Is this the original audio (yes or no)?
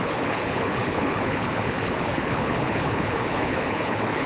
no